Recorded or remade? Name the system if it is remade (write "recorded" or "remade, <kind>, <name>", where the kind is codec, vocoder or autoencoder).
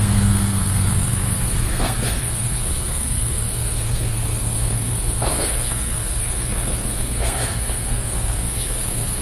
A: remade, codec, SNAC